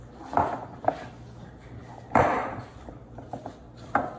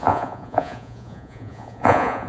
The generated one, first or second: second